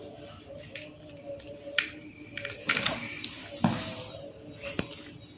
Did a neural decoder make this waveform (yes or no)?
no